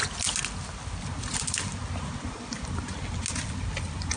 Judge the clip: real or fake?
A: real